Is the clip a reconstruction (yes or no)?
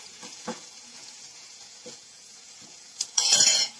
yes